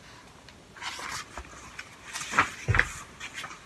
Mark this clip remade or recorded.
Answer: recorded